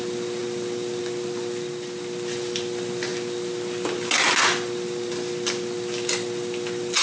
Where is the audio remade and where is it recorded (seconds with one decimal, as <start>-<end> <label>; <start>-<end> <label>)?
0.0-7.0 recorded